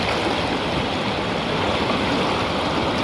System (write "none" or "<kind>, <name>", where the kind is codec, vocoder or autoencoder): none